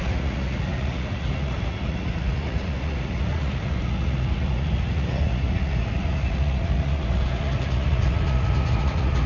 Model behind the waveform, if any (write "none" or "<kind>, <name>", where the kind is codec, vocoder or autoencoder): vocoder, Vocos